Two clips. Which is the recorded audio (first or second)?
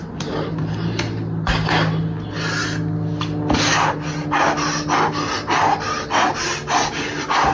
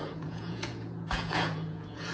first